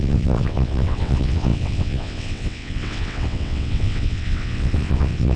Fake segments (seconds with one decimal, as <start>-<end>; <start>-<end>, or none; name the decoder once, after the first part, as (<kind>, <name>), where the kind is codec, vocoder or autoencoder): 0.0-5.4 (vocoder, WaveNeXt)

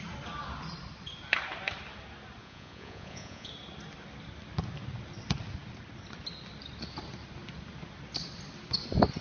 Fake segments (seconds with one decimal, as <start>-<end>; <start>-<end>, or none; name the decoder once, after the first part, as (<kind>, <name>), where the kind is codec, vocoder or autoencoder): 2.4-3.5 (vocoder, Vocos)

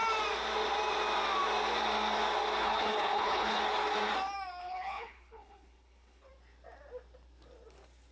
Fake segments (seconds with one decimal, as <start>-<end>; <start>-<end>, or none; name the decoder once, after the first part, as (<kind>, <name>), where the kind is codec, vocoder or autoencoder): 2.6-3.6 (codec, HILCodec); 4.6-6.3

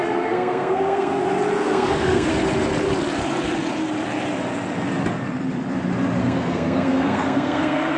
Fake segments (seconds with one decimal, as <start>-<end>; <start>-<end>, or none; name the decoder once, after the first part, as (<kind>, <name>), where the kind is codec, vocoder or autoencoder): 0.0-1.1 (codec, SNAC); 1.6-2.3; 6.2-8.0

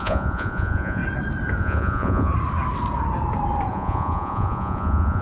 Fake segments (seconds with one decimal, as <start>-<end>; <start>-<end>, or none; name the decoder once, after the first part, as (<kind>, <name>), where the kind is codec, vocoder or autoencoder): 0.0-1.0 (vocoder, Vocos); 1.6-2.3; 3.7-5.2

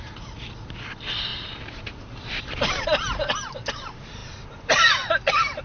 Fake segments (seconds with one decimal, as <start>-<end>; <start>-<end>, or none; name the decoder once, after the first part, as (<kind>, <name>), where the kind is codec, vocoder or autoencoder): 1.3-2.8 (vocoder, BigVGAN v2)

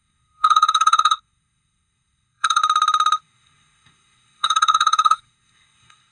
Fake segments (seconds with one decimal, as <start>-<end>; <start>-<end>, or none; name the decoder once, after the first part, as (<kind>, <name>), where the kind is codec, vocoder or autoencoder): 0.0-2.6 (codec, SNAC); 3.2-6.1

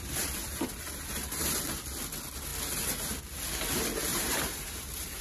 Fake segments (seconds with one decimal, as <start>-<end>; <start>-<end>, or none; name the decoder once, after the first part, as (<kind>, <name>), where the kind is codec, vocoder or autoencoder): 0.4-1.6 (vocoder, BigVGAN v2); 4.1-5.2